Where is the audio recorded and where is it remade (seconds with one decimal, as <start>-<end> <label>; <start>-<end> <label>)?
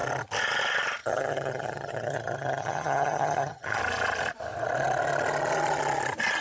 0.0-1.0 recorded; 1.0-3.8 remade; 3.8-6.4 recorded